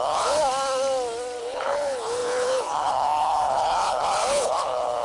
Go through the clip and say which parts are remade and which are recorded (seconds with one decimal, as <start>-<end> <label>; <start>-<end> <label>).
0.0-0.4 remade; 0.4-1.4 recorded; 1.4-5.0 remade